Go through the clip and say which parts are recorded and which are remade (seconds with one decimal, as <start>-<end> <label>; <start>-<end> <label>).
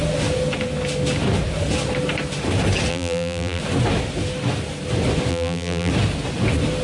0.0-2.9 recorded; 2.9-3.6 remade; 3.6-5.3 recorded; 5.3-5.9 remade; 5.9-6.8 recorded